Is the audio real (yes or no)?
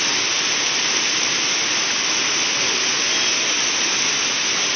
yes